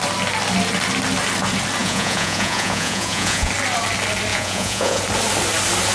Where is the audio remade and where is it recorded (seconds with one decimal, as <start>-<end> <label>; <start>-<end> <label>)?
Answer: 0.0-1.8 recorded; 1.8-3.5 remade; 3.5-4.3 recorded; 4.3-5.0 remade; 5.0-5.9 recorded